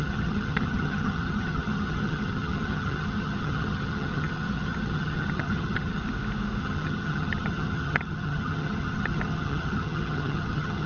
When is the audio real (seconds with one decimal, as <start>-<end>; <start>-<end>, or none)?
6.0-6.6